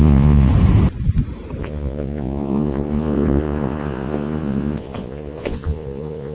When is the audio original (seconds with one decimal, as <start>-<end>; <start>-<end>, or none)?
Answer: 0.5-1.6